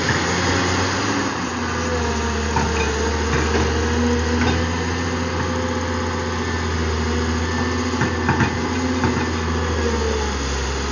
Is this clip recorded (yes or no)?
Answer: yes